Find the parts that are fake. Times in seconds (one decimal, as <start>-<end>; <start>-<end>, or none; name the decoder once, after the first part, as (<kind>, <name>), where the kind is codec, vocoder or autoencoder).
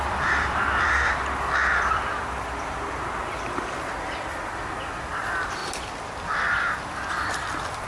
0.0-5.6 (vocoder, BigVGAN v2); 7.1-7.9